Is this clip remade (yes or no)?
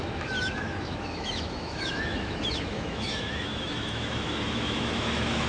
yes